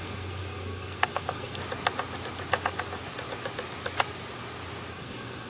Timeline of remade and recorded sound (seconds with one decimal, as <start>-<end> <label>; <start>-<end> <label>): 0.0-1.6 remade; 1.6-4.9 recorded; 4.9-5.5 remade